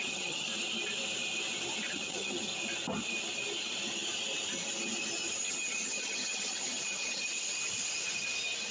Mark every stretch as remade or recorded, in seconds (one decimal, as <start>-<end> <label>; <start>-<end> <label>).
0.0-0.5 remade; 0.5-1.9 recorded; 1.9-2.5 remade; 2.5-5.5 recorded; 5.5-7.2 remade; 7.2-8.7 recorded